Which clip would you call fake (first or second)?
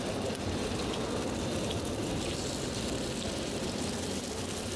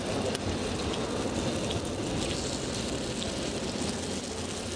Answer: first